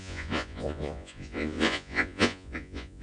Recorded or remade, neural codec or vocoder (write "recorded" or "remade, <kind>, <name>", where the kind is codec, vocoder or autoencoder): remade, vocoder, Vocos